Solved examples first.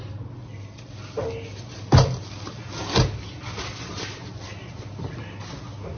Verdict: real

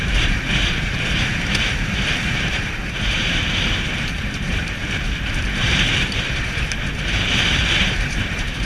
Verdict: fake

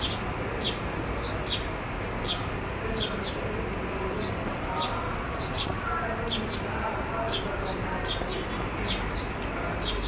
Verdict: real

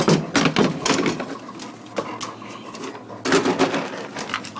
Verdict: real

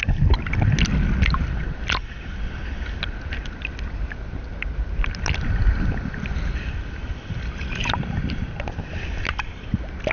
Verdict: real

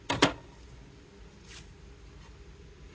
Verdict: real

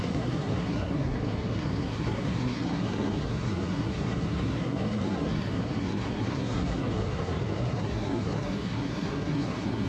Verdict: fake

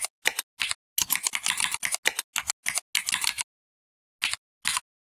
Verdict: real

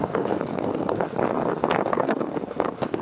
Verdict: fake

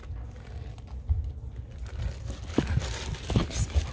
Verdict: real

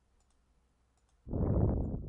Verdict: real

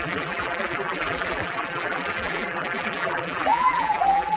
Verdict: fake